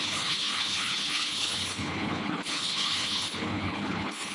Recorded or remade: remade